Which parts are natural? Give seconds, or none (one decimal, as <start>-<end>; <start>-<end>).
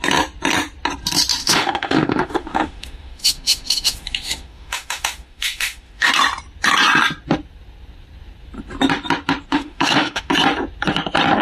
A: 0.0-1.4; 6.1-9.5; 10.3-11.4